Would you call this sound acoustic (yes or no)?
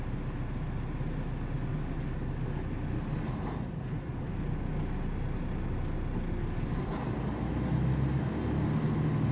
yes